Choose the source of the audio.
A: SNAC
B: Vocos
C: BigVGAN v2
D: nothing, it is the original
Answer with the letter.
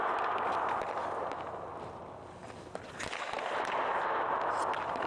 D